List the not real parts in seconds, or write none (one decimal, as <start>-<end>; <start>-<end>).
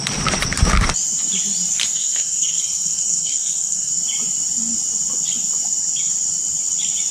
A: 1.9-3.9